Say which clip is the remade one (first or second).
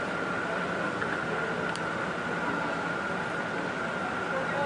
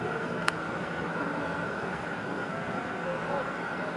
second